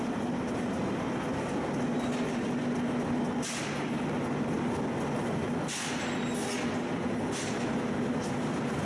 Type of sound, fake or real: real